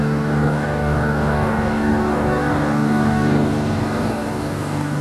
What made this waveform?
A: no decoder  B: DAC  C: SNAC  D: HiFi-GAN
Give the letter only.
B